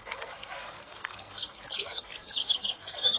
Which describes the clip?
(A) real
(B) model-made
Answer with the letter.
B